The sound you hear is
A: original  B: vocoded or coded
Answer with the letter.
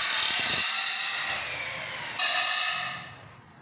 A